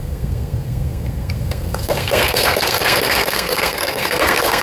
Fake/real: fake